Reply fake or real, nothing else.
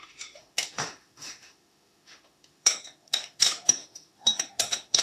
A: fake